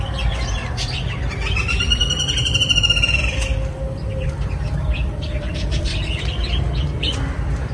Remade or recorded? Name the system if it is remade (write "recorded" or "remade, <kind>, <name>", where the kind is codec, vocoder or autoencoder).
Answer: remade, vocoder, BigVGAN v2